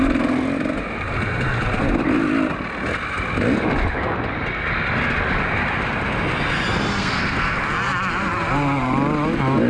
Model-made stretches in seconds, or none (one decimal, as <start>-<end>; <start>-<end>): 7.0-7.6